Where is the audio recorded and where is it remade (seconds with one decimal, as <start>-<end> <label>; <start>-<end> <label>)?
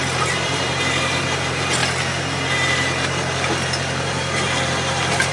0.0-1.8 remade; 1.8-5.3 recorded